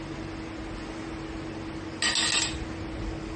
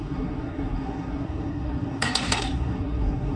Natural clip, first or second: first